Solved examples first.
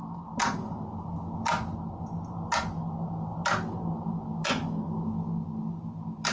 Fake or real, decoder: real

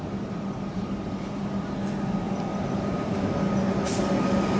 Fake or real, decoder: real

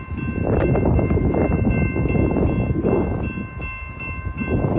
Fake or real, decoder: real